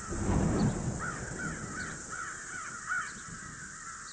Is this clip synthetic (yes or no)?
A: no